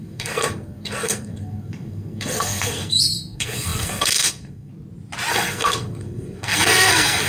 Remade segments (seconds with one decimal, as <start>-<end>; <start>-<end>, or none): 0.0-4.7; 5.3-7.3